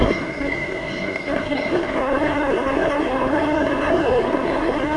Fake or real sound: fake